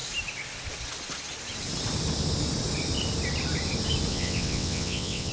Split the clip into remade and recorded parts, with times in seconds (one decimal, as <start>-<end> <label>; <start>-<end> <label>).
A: 0.0-4.1 recorded; 4.1-5.3 remade